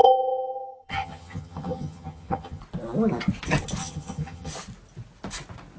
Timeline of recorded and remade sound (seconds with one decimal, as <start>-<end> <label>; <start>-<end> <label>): 0.0-2.6 remade; 2.6-3.8 recorded; 3.8-4.5 remade; 4.5-5.8 recorded